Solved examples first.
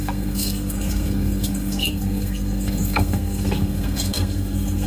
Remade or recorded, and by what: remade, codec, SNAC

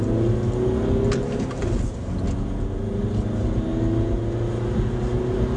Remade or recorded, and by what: recorded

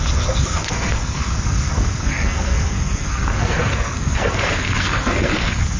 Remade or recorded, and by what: remade, codec, SNAC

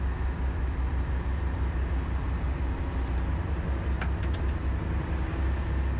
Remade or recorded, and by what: recorded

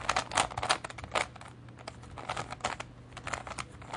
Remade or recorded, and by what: recorded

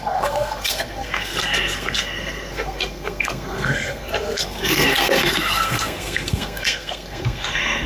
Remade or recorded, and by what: remade, codec, SNAC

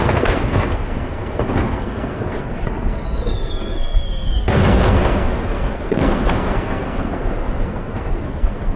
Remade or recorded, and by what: remade, codec, SNAC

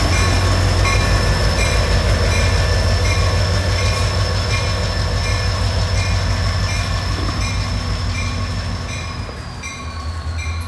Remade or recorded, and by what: recorded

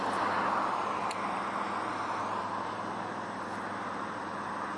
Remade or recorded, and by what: recorded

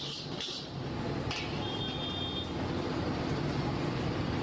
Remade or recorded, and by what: recorded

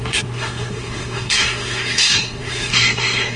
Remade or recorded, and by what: remade, codec, SNAC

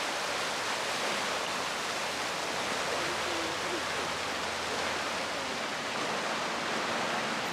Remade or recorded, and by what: recorded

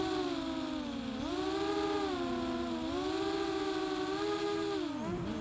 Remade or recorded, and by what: recorded